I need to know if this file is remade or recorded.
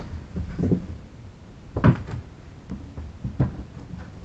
recorded